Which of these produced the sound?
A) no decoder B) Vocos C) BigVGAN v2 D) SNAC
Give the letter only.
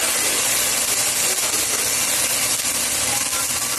A